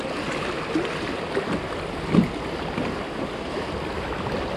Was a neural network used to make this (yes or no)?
no